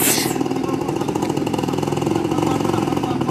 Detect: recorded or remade recorded